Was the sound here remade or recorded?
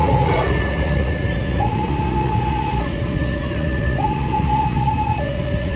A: remade